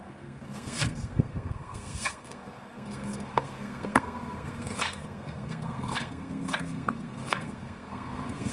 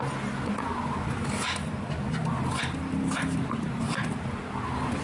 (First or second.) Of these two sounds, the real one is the second